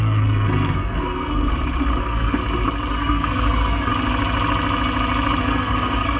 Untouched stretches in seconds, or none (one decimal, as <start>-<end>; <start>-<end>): 1.5-2.0; 2.4-2.9; 3.9-5.4